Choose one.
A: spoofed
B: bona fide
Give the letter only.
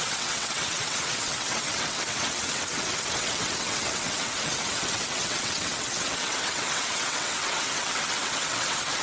A